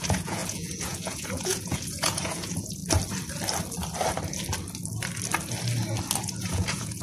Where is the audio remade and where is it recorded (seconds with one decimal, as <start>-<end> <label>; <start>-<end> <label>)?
0.0-2.8 remade; 2.8-6.2 recorded; 6.2-7.0 remade